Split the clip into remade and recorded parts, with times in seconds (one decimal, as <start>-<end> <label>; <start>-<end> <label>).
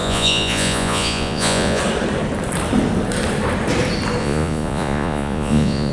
0.0-1.8 remade; 1.8-4.2 recorded; 4.2-5.9 remade